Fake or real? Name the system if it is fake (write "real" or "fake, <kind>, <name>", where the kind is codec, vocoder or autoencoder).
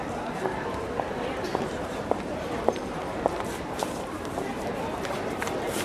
fake, vocoder, BigVGAN v2